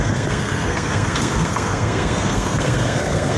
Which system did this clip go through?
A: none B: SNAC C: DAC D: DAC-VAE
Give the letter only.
B